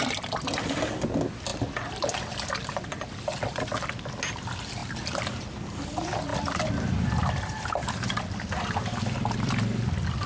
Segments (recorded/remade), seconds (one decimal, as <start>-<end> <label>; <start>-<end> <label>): 0.0-1.5 recorded; 1.5-2.3 remade; 2.3-6.3 recorded; 6.3-8.2 remade; 8.2-10.3 recorded